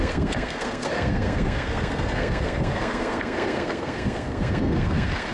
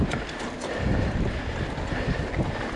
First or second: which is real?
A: second